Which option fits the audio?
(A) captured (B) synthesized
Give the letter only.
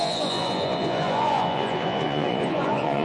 B